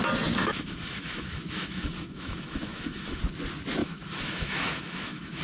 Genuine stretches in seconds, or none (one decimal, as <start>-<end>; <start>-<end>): 0.0-0.4; 3.2-3.8